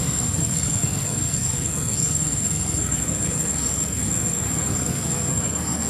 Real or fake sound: fake